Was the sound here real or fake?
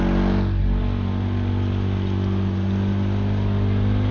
real